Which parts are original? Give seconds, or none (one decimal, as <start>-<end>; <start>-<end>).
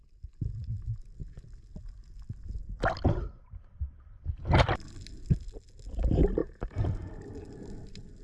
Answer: 0.0-6.4; 7.3-8.2